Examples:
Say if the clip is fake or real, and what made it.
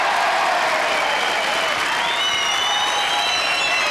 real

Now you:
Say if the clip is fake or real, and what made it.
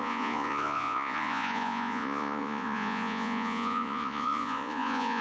fake, vocoder, Vocos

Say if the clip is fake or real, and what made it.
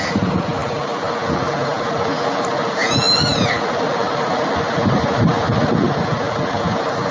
real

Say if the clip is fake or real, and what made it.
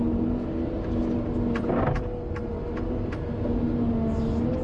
real